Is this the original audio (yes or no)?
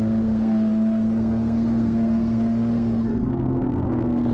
no